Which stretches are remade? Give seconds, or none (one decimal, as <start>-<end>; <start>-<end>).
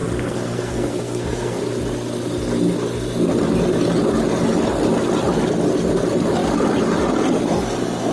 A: 0.0-1.6